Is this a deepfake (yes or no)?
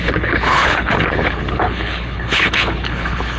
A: yes